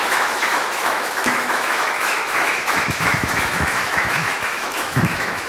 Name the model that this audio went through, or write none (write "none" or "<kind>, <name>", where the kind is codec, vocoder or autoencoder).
autoencoder, DAC-VAE